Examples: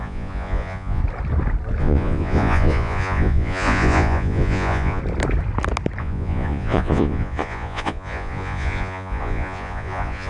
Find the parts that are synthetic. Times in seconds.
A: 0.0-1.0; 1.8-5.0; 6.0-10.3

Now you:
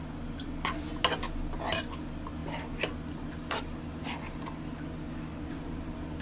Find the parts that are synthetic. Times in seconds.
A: none